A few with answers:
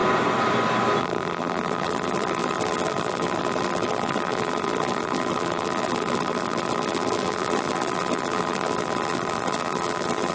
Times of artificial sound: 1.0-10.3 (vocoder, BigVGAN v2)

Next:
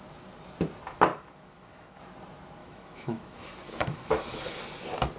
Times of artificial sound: 1.1-2.0 (autoencoder, DAC-VAE); 2.6-4.6

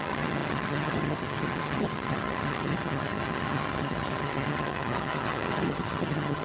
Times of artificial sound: 0.0-6.4 (vocoder, HiFi-GAN)

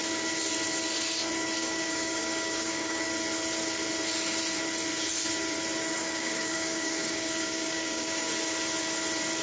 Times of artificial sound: 1.6-3.1 (codec, DAC); 6.0-8.3

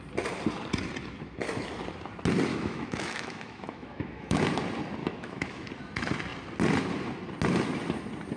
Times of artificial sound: 2.5-4.4 (autoencoder, DAC-VAE); 5.0-5.7

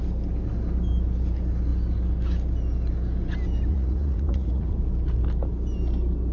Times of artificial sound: 3.7-4.7 (vocoder, Vocos)

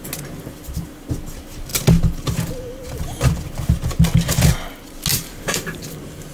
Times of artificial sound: 5.1-5.8 (vocoder, BigVGAN v2)